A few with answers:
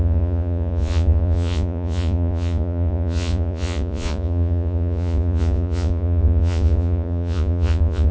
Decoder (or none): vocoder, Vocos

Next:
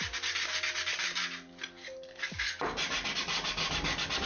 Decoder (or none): none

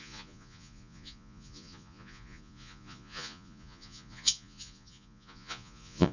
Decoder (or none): vocoder, Vocos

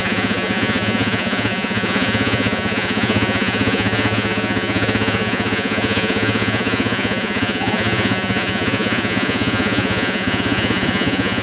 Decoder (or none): vocoder, Vocos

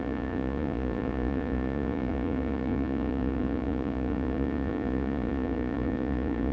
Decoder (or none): vocoder, Vocos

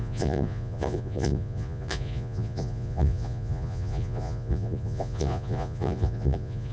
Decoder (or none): vocoder, Vocos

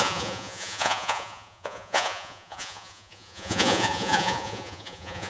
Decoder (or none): vocoder, Vocos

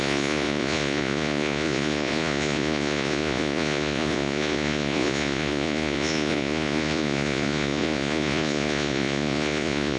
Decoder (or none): vocoder, Vocos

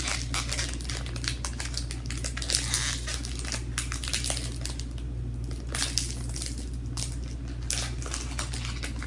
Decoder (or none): none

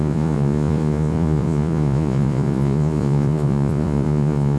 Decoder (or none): vocoder, Vocos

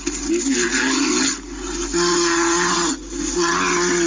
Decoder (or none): none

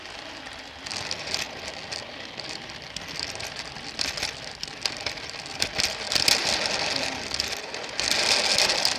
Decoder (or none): none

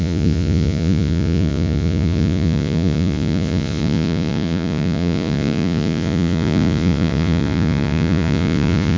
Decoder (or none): vocoder, Vocos